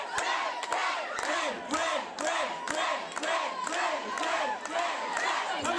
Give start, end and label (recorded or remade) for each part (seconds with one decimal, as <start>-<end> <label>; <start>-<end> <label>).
0.0-0.8 recorded; 0.8-2.2 remade; 2.2-4.0 recorded; 4.0-5.2 remade; 5.2-5.8 recorded